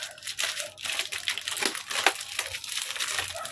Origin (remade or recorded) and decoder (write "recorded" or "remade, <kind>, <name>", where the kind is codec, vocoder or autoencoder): recorded